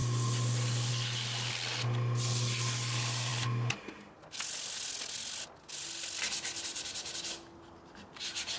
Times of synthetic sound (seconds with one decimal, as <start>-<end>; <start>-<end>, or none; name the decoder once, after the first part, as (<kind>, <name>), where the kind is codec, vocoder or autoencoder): none